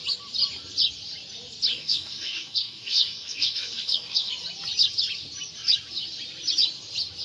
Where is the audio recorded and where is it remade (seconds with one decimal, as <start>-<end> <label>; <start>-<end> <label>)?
0.0-1.7 recorded; 1.7-4.3 remade; 4.3-7.2 recorded